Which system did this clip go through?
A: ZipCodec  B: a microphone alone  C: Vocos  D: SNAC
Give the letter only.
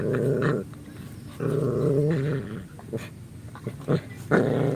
B